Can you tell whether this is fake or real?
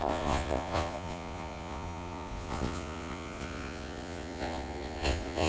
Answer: fake